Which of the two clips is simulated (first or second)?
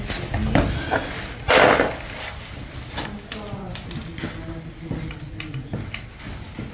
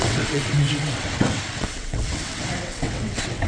second